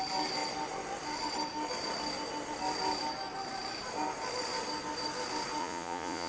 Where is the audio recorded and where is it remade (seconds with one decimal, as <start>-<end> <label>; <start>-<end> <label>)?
0.0-5.6 recorded; 5.6-6.3 remade